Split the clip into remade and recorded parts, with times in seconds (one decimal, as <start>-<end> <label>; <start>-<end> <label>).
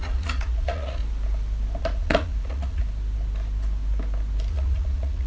0.0-1.0 remade; 1.0-1.8 recorded; 1.8-2.8 remade; 2.8-4.5 recorded; 4.5-5.3 remade